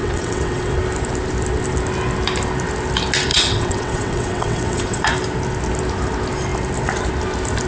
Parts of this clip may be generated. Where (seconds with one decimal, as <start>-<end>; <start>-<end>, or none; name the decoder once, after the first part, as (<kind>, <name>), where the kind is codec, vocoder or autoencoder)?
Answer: 0.0-0.8 (vocoder, WaveNeXt); 3.3-5.0